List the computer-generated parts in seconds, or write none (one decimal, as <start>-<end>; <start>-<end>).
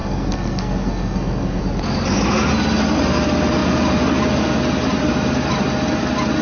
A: 0.0-1.6